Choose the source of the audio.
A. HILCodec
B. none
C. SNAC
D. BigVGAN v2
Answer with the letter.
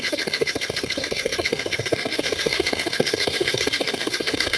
C